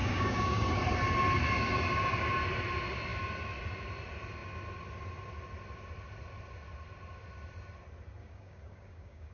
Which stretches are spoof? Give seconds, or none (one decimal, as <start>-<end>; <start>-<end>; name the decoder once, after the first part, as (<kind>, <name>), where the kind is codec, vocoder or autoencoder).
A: 0.0-0.8 (codec, DAC); 8.2-9.3